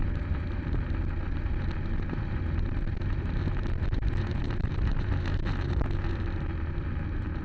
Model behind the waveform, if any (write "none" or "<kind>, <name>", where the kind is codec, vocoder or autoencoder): vocoder, BigVGAN v2